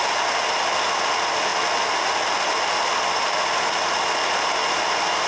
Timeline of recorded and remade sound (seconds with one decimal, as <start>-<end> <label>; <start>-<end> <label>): 0.0-5.3 recorded